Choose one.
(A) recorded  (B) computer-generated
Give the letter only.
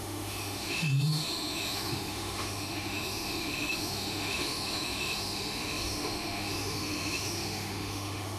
B